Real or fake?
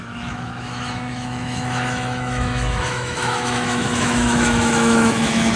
fake